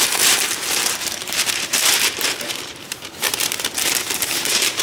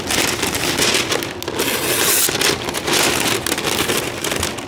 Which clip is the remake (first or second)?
first